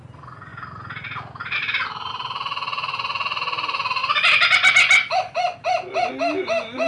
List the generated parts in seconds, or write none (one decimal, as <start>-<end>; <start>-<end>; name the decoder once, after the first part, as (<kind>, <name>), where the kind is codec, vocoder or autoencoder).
0.5-2.1 (vocoder, BigVGAN v2); 4.0-6.1